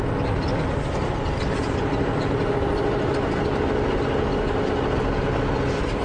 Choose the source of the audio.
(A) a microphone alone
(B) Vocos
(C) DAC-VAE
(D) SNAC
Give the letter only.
A